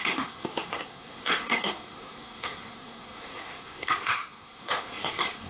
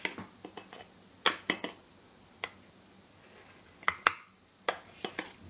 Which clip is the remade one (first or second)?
first